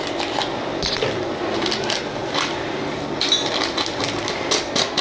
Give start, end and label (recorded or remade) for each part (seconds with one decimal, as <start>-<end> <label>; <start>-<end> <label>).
0.0-5.0 recorded